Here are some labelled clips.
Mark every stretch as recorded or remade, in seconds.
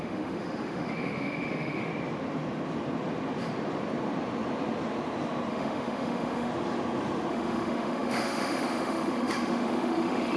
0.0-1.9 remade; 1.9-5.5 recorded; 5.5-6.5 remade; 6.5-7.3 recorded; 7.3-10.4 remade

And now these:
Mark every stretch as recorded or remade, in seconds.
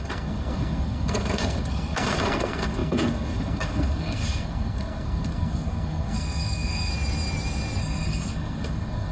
0.0-6.9 remade; 6.9-7.8 recorded; 7.8-9.1 remade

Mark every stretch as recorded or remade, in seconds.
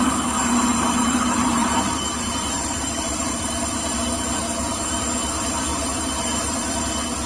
0.0-0.7 recorded; 0.7-3.5 remade; 3.5-4.4 recorded; 4.4-4.9 remade; 4.9-5.7 recorded; 5.7-6.7 remade; 6.7-7.3 recorded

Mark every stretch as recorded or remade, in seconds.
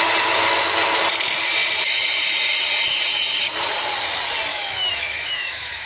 0.0-4.5 recorded; 4.5-5.9 remade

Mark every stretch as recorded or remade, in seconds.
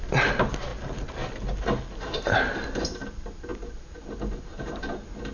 0.0-5.3 recorded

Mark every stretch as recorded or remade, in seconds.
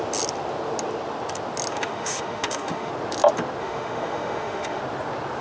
0.0-1.7 recorded; 1.7-2.9 remade; 2.9-3.6 recorded; 3.6-4.8 remade; 4.8-5.4 recorded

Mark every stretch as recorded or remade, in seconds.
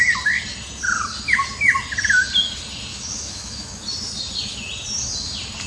0.0-2.9 recorded; 2.9-3.8 remade; 3.8-5.7 recorded